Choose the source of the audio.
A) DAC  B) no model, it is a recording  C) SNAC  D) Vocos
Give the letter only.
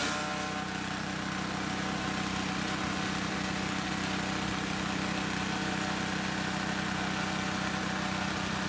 B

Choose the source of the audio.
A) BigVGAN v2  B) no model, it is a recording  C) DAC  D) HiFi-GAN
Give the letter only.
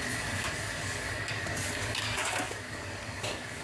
C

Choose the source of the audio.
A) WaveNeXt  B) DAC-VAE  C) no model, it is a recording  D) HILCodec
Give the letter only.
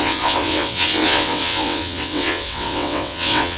A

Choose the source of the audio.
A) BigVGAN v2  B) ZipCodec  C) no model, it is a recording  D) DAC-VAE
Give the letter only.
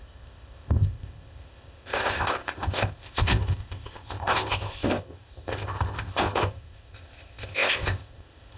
B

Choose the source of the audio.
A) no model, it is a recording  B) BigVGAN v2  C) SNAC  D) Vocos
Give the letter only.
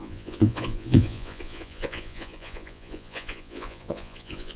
D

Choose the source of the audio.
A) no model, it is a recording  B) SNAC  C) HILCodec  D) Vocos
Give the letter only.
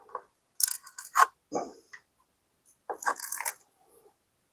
A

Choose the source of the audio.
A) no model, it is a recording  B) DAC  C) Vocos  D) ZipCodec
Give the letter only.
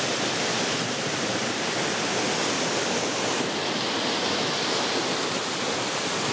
A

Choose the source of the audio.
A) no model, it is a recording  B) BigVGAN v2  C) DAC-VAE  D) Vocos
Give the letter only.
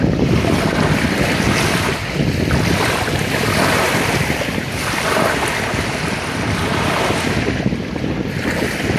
A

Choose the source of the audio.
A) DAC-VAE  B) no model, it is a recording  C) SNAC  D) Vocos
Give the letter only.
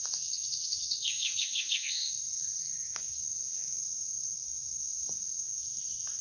C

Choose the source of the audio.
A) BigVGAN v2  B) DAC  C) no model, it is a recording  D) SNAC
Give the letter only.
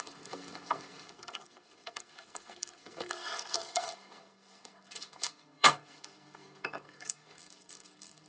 D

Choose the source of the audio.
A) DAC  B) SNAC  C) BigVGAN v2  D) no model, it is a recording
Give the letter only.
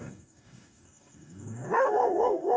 A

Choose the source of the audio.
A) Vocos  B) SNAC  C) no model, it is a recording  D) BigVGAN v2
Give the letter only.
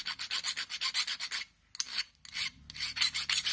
C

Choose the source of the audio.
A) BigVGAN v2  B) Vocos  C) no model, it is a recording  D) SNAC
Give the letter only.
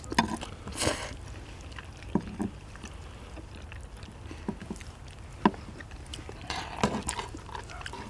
C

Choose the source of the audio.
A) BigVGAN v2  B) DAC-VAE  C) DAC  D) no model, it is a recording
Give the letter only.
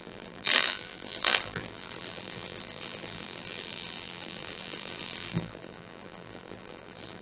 A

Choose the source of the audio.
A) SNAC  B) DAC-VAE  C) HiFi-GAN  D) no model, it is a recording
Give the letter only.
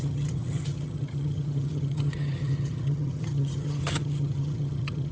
C